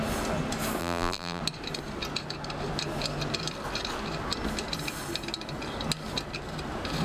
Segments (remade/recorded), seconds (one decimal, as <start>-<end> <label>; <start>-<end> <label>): 0.0-0.8 recorded; 0.8-1.4 remade; 1.4-7.0 recorded